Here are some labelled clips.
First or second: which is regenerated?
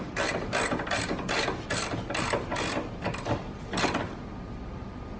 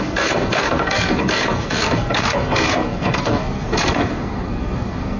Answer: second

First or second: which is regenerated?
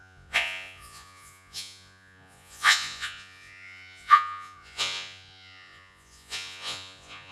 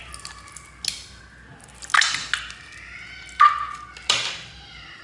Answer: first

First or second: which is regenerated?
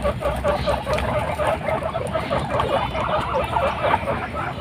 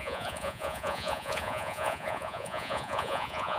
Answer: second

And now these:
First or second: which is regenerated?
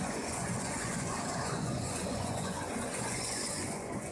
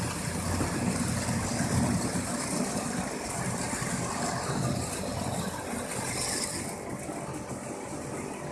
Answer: first